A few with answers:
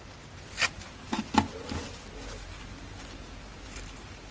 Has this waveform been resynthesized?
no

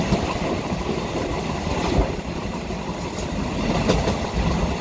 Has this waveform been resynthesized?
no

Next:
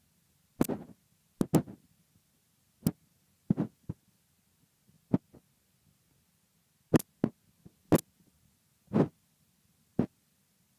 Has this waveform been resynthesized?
no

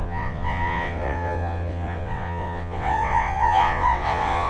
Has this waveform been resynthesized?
yes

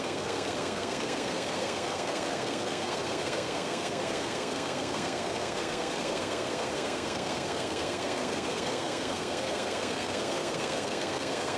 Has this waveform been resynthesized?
yes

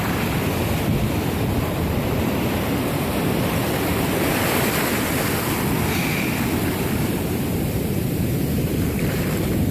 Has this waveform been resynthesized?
yes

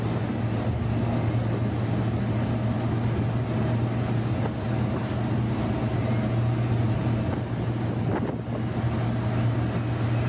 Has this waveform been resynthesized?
no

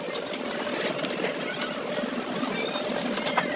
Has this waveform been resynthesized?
no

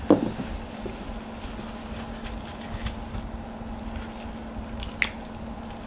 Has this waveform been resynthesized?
no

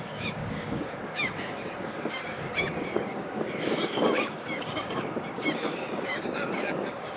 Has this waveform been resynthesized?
yes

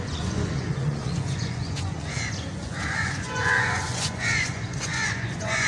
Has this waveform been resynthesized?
yes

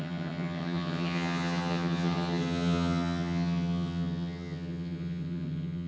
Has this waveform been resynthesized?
yes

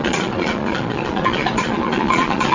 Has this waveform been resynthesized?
yes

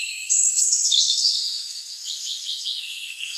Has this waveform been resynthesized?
yes